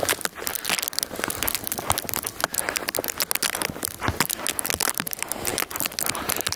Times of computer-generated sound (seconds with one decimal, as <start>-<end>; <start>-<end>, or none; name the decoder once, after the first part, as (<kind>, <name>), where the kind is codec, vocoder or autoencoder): none